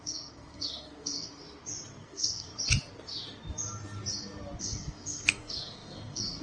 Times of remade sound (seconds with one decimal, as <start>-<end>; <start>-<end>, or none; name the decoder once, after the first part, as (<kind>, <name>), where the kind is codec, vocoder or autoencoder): 0.0-1.3 (codec, SNAC); 2.0-2.5; 4.6-6.4